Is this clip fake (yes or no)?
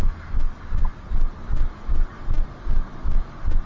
no